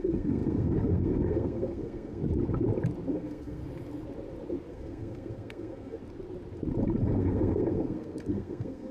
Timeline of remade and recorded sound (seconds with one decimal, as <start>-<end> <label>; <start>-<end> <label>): 0.0-2.2 remade; 2.2-3.1 recorded; 3.1-3.6 remade; 3.6-4.7 recorded; 4.7-6.0 remade; 6.0-7.0 recorded; 7.0-8.9 remade